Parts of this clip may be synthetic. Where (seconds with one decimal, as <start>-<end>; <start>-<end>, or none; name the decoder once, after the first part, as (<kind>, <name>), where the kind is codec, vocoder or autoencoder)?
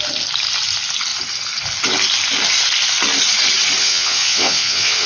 3.8-5.1 (vocoder, WaveNeXt)